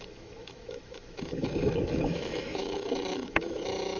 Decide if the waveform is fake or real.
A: fake